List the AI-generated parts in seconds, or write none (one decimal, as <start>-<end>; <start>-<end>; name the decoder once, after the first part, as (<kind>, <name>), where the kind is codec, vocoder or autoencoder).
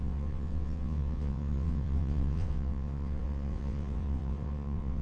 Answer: 0.0-5.0 (vocoder, WaveNeXt)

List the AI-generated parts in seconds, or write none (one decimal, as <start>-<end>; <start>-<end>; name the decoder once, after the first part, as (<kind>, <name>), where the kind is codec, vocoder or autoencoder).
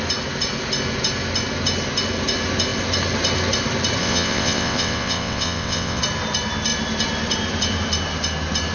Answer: 4.0-6.0 (vocoder, WaveNeXt)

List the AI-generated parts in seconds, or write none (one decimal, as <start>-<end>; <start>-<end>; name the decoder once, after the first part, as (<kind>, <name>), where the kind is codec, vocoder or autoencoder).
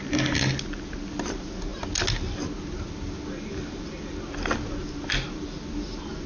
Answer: none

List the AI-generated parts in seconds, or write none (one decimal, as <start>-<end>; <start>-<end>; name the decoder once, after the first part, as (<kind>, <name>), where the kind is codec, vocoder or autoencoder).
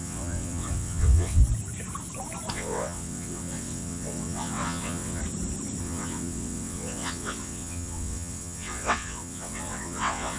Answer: 0.0-1.4 (vocoder, WaveNeXt); 2.5-5.2; 5.8-10.4